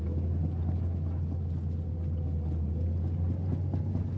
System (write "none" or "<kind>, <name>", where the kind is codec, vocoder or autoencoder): none